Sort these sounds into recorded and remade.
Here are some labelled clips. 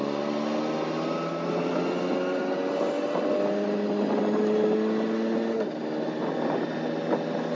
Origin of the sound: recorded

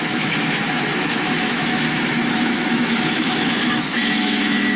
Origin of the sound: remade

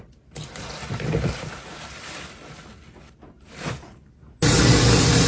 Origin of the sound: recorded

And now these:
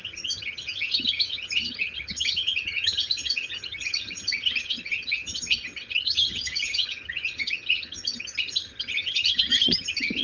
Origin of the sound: remade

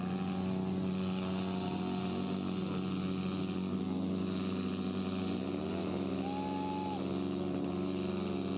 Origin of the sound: recorded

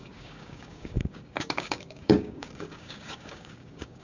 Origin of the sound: remade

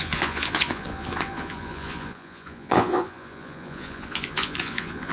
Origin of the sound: remade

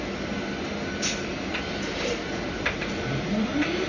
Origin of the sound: recorded